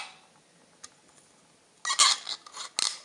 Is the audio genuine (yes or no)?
yes